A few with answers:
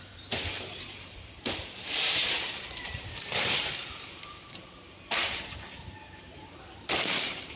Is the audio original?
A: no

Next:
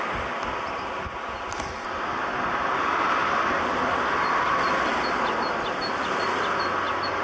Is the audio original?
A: yes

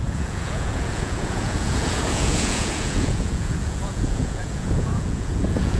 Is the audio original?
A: no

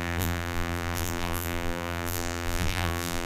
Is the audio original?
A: no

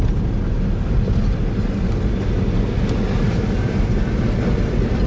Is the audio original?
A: yes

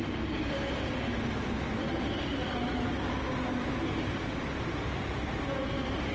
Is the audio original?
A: yes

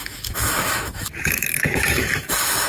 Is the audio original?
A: no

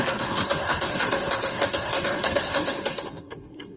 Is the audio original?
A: no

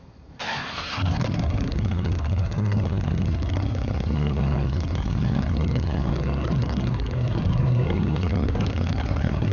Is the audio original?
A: no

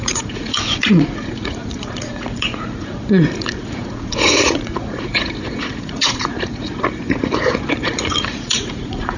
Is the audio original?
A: no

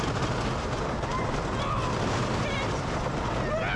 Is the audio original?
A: yes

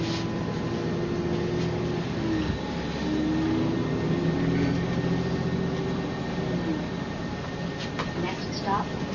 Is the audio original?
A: yes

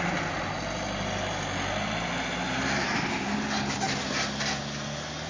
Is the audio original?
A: yes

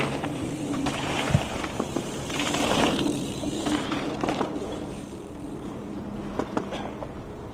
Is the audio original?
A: no